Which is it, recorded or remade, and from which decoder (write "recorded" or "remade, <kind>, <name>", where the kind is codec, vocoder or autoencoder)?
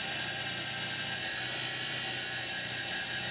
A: recorded